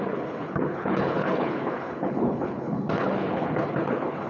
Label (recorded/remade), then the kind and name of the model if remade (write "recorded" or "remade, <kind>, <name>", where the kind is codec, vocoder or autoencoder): remade, codec, HILCodec